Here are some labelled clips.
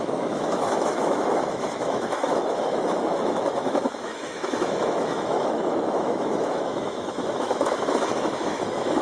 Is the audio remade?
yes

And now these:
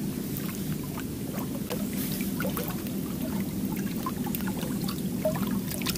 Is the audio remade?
no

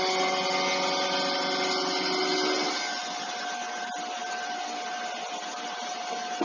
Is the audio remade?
no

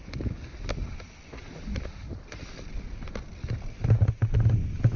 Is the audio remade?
no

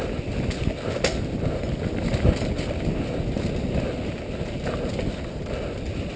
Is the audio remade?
no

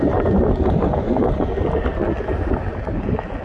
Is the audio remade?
no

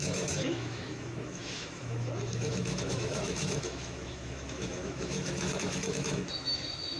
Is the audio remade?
yes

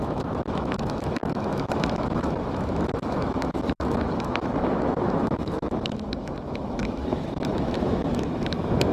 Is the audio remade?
yes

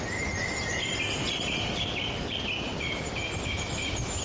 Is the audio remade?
no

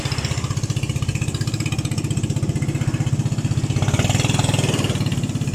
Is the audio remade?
no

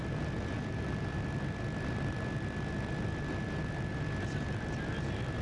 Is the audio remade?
no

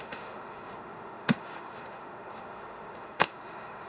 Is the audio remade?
yes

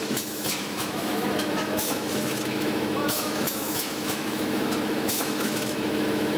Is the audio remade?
yes